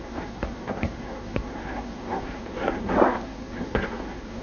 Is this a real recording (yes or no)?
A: no